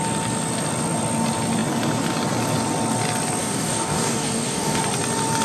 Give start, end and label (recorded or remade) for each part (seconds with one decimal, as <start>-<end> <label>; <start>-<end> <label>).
0.0-3.4 recorded; 3.4-4.8 remade; 4.8-5.4 recorded